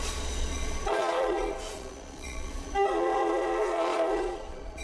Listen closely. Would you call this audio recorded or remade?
remade